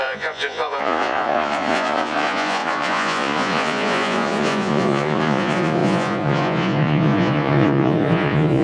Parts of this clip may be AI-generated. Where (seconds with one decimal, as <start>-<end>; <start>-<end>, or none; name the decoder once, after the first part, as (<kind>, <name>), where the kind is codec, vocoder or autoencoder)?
0.0-8.6 (vocoder, Vocos)